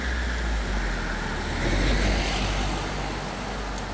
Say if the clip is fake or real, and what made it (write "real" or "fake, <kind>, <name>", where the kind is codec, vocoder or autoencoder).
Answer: real